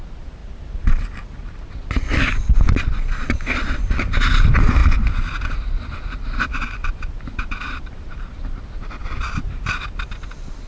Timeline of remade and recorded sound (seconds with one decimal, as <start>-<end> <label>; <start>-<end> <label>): 0.0-2.5 recorded; 2.5-3.8 remade; 3.8-9.0 recorded; 9.0-9.5 remade; 9.5-10.7 recorded